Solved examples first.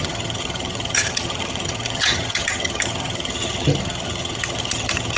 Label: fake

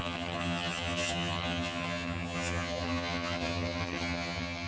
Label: fake